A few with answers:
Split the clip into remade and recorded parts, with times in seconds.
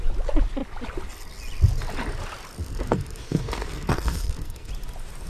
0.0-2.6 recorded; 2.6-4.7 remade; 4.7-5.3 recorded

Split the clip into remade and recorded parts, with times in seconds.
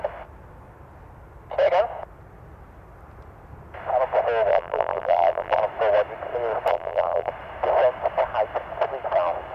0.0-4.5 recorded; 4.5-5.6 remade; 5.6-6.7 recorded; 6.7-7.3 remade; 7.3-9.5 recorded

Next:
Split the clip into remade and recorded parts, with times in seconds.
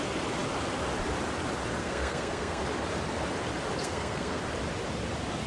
0.0-1.8 recorded; 1.8-2.6 remade; 2.6-3.8 recorded; 3.8-4.4 remade; 4.4-5.5 recorded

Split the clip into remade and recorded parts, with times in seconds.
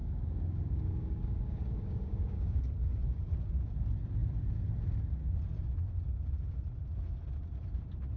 0.0-2.6 remade; 2.6-8.2 recorded